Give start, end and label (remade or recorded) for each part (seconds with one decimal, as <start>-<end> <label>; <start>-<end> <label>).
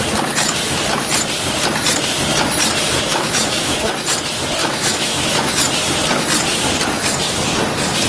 0.0-3.1 recorded; 3.1-3.9 remade; 3.9-4.6 recorded; 4.6-5.6 remade; 5.6-8.1 recorded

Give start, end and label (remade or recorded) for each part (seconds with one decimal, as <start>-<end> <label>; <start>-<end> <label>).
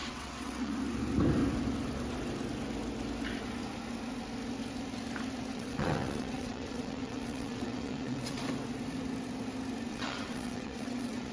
0.0-0.7 remade; 0.7-5.5 recorded; 5.5-8.4 remade; 8.4-9.9 recorded; 9.9-11.3 remade